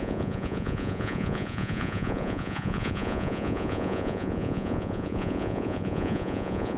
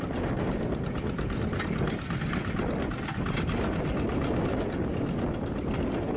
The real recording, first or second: second